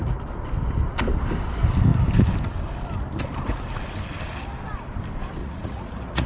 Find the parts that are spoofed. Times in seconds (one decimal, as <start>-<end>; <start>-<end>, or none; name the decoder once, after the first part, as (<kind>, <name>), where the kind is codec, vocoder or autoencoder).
5.4-6.3 (vocoder, Vocos)